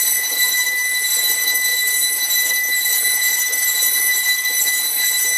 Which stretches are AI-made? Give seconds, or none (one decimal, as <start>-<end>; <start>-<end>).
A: 2.9-3.4